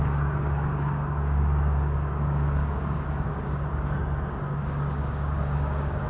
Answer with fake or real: fake